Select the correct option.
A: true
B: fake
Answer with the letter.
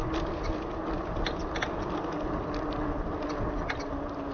A